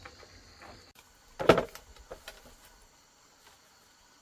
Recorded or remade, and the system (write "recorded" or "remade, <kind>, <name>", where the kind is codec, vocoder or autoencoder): recorded